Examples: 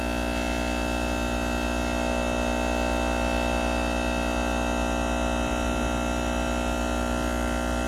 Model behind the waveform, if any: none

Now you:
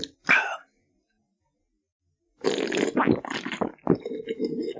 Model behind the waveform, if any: none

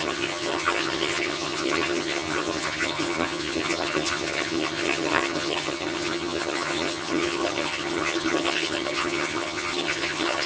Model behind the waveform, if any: vocoder, HiFi-GAN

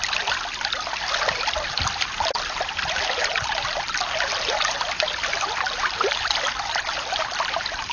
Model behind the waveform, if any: none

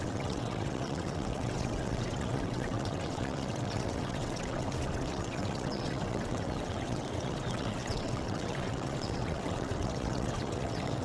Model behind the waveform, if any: vocoder, WaveNeXt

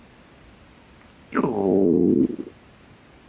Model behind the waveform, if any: none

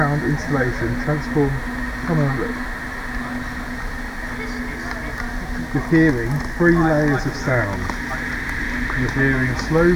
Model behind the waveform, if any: none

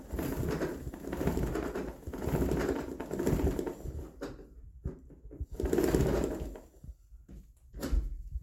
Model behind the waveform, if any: none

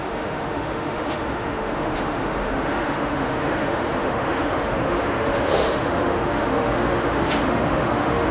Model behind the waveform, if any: autoencoder, DAC-VAE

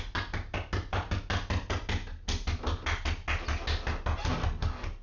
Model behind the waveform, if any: none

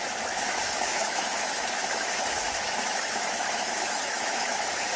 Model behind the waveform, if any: autoencoder, DAC-VAE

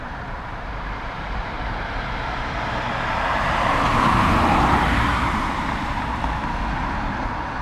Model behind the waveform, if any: vocoder, BigVGAN v2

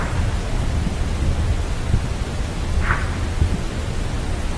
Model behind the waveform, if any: none